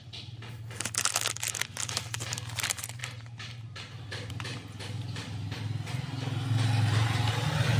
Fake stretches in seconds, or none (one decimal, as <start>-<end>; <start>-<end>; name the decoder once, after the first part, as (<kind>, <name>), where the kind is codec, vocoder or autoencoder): 3.0-4.3 (vocoder, BigVGAN v2)